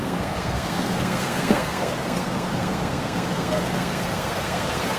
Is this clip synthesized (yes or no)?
yes